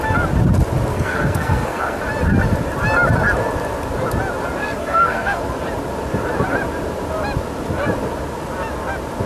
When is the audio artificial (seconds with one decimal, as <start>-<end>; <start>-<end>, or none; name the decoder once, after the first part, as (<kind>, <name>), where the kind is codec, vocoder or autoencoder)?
0.9-2.0 (codec, SNAC); 4.6-5.4